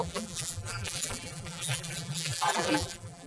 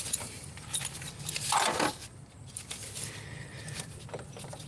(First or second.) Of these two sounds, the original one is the second